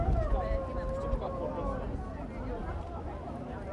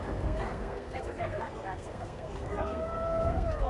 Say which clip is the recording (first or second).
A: first